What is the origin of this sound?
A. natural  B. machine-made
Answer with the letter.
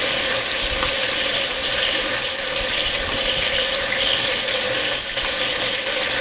A